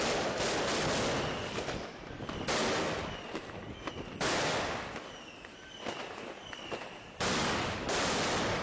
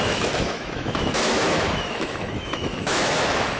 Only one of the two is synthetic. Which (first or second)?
second